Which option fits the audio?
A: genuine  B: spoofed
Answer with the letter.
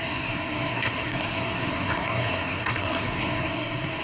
B